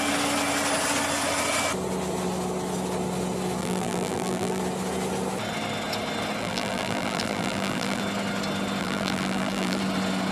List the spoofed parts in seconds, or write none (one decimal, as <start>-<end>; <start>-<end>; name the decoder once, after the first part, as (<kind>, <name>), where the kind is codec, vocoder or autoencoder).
3.6-4.6 (vocoder, BigVGAN v2); 6.4-8.0; 8.8-9.8